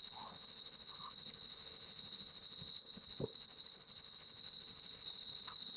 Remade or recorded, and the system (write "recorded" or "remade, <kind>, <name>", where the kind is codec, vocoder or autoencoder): remade, codec, HILCodec